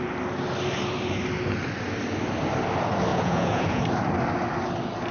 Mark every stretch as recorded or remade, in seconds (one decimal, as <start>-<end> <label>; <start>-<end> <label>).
0.0-3.1 recorded; 3.1-3.8 remade; 3.8-5.1 recorded